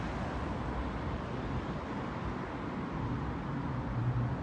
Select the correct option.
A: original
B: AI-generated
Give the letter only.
A